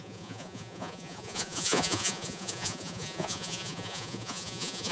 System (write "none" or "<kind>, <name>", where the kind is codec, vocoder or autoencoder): vocoder, Vocos